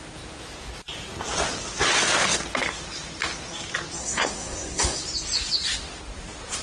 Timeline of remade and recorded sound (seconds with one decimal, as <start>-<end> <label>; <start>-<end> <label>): 0.0-4.0 recorded; 4.0-5.0 remade; 5.0-6.6 recorded